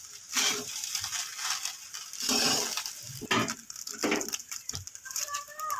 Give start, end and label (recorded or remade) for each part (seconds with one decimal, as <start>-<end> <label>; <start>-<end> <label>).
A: 0.0-0.5 recorded; 0.5-0.9 remade; 0.9-4.2 recorded; 4.2-5.8 remade